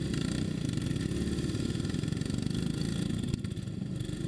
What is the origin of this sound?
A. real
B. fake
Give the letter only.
A